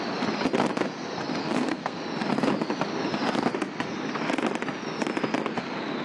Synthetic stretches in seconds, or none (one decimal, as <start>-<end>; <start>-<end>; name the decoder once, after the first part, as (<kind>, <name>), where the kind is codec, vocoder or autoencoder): 1.4-2.0 (codec, SNAC)

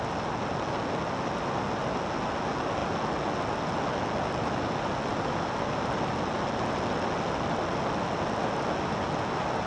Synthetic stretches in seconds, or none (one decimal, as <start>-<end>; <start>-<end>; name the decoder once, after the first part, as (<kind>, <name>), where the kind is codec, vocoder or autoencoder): none

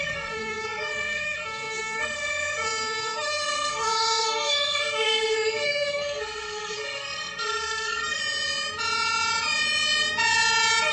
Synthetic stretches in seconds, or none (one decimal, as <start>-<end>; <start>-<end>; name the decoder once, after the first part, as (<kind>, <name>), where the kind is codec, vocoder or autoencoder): 0.0-8.2 (codec, SNAC)

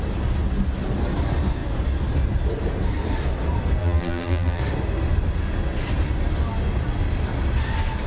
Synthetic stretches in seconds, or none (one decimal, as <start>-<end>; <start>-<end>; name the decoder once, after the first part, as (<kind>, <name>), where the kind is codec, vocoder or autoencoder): 3.8-4.6 (vocoder, BigVGAN v2)

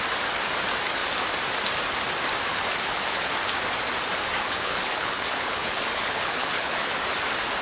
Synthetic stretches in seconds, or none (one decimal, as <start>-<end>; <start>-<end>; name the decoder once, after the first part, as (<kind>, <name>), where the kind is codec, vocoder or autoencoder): 2.5-3.3 (codec, HILCodec); 4.4-7.0

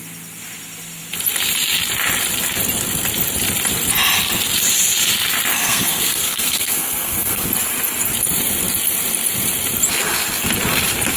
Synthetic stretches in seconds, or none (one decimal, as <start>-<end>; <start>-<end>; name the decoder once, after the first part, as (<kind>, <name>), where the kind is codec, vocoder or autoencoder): 5.5-7.5 (codec, SNAC)

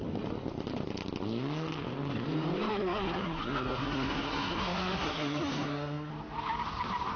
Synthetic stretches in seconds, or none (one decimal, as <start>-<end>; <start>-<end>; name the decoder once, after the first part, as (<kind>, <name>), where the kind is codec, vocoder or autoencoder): 2.7-6.1 (codec, SNAC)

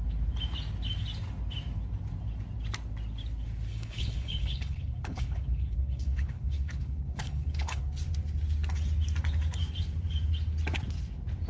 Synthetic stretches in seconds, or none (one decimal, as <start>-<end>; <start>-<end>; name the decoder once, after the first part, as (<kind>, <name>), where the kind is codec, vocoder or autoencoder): 3.7-7.8 (codec, HILCodec)